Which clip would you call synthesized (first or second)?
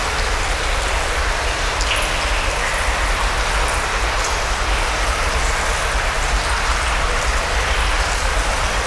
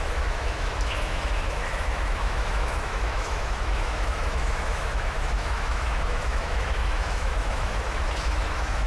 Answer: second